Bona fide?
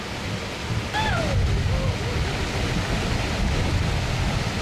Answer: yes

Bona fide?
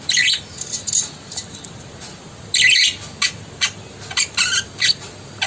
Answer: yes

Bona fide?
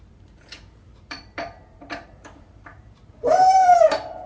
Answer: no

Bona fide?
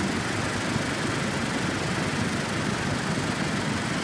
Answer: yes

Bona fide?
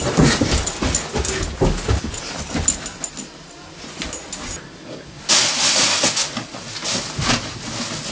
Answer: yes